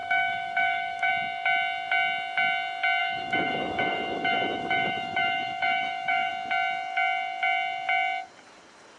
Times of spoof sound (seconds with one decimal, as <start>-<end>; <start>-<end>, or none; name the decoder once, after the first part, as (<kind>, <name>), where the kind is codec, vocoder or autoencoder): 0.0-1.1 (autoencoder, DAC-VAE); 3.0-6.3